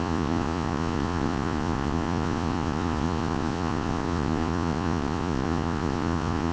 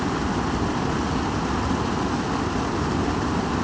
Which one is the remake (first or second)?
first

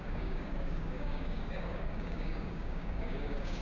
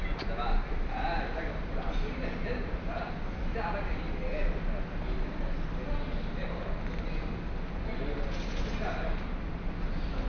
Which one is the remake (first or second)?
first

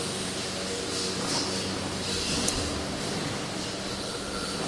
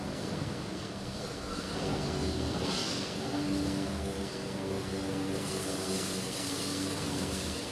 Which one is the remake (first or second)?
second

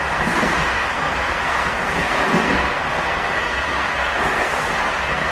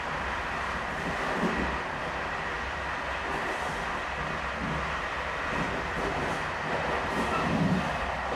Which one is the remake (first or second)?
first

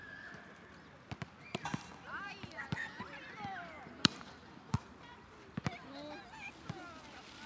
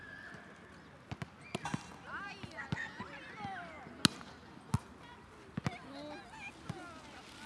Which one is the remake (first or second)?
first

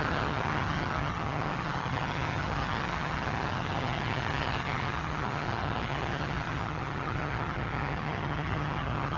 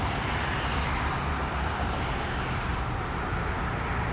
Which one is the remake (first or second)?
first